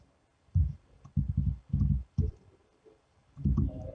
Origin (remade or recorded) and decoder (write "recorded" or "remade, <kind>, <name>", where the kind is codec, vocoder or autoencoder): recorded